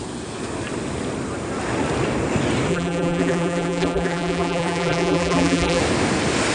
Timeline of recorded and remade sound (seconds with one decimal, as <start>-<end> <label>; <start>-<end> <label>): 0.0-2.7 recorded; 2.7-5.8 remade; 5.8-6.5 recorded